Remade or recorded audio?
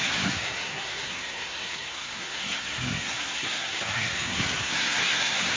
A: remade